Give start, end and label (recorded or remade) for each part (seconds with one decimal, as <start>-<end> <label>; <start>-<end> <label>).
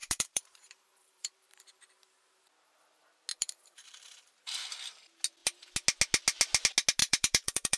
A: 0.0-1.7 remade; 1.7-3.3 recorded; 3.3-5.0 remade; 5.0-7.0 recorded; 7.0-7.8 remade